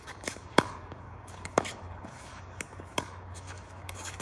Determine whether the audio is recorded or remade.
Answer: remade